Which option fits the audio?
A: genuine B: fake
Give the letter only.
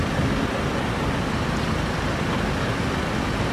A